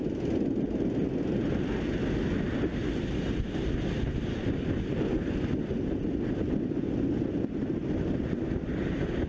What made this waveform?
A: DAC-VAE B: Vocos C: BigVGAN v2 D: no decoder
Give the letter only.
D